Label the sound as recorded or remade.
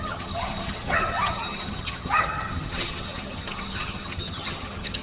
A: remade